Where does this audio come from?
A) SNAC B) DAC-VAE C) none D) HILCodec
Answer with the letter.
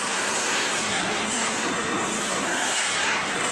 A